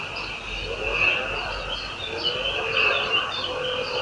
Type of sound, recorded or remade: recorded